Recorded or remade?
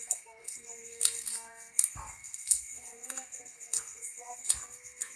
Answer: remade